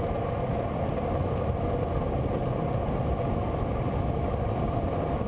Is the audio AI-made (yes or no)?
no